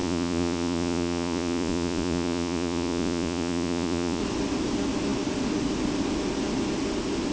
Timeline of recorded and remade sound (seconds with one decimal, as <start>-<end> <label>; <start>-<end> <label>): 0.0-4.2 remade; 4.2-7.3 recorded